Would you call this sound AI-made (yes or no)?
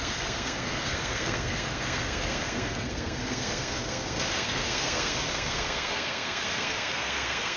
yes